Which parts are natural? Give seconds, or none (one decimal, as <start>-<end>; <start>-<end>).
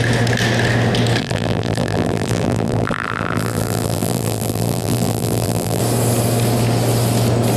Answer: 0.0-1.2; 5.8-7.6